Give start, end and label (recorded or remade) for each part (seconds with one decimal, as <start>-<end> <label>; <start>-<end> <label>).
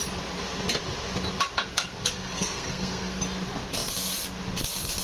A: 0.0-1.7 recorded; 1.7-3.2 remade; 3.2-5.0 recorded